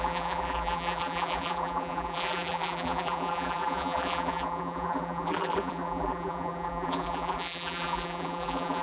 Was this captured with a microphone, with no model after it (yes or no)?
no